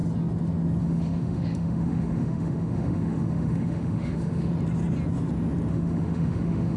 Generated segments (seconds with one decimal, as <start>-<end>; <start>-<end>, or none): 0.8-4.5; 5.7-6.8